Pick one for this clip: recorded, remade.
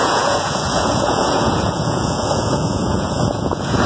remade